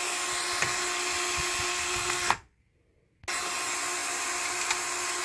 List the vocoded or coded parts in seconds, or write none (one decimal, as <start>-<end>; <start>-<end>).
1.7-2.6